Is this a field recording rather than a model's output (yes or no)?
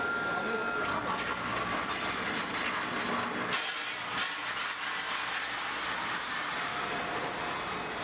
yes